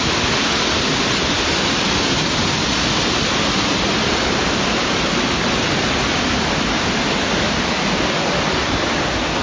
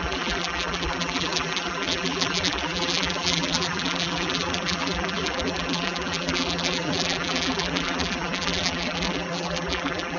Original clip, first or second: first